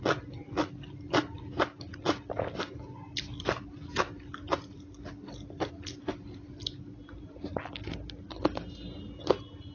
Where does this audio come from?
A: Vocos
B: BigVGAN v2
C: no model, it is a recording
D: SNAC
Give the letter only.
C